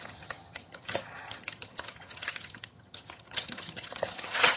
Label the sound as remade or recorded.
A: remade